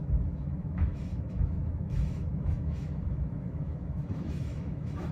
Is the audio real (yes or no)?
no